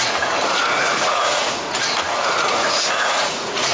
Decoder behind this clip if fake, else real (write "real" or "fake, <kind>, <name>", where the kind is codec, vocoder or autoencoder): fake, vocoder, Vocos